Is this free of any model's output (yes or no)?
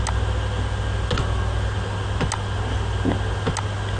yes